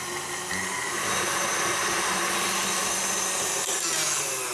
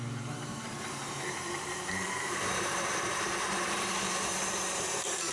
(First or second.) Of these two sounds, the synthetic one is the second